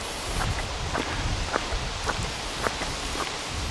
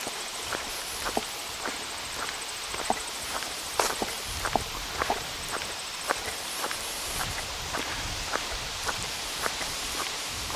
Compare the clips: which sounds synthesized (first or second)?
second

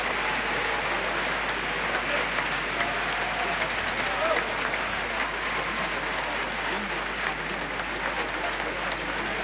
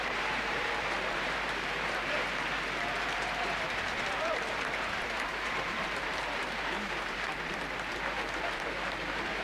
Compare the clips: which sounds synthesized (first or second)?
second